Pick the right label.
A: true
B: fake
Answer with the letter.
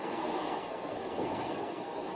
B